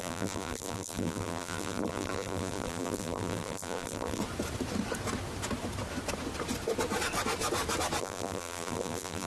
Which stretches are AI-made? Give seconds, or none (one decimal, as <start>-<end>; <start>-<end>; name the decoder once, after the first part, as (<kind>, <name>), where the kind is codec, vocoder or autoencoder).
0.0-4.2 (vocoder, BigVGAN v2); 8.0-9.3